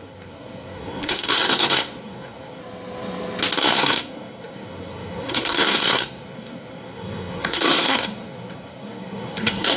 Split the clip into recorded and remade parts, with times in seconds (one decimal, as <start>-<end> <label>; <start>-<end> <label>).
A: 0.0-2.6 remade; 2.6-3.6 recorded; 3.6-9.8 remade